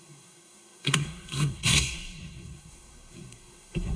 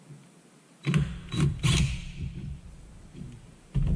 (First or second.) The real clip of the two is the second